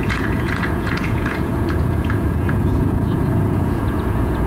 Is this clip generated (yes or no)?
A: yes